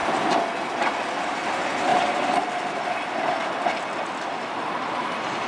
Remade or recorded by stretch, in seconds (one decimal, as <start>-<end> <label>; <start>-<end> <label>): 0.0-5.5 recorded